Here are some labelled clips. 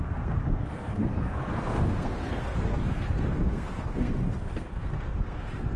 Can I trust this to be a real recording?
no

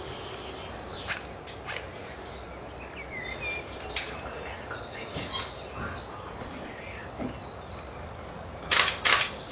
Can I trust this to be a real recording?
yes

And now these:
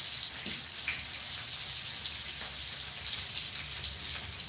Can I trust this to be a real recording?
yes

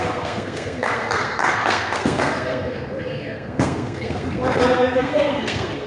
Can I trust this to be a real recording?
no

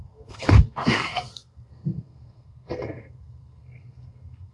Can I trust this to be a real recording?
no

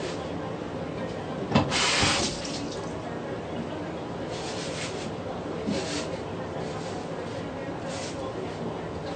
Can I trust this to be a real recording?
yes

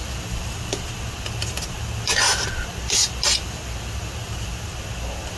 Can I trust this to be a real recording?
yes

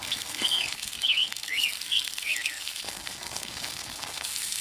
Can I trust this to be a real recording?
no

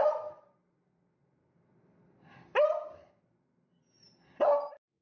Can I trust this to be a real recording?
yes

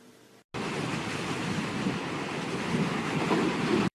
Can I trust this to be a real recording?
yes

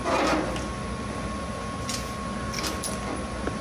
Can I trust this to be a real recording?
yes